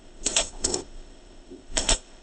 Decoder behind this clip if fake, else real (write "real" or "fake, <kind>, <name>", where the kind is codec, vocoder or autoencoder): fake, codec, ZipCodec